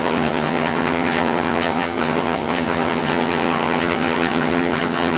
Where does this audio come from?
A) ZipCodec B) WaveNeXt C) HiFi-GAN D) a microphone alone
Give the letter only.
C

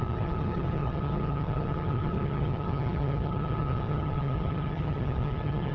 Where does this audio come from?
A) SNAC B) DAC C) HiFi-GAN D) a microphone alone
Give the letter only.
C